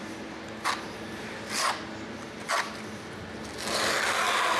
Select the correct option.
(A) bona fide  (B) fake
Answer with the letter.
A